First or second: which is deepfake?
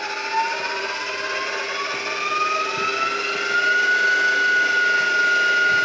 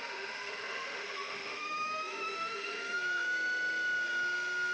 second